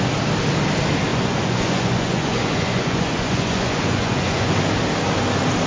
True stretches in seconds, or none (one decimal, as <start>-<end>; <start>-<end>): 0.0-1.1; 4.5-5.7